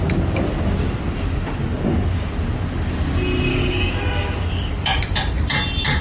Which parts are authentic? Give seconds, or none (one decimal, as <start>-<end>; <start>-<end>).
0.0-1.7; 2.3-3.5; 4.7-6.0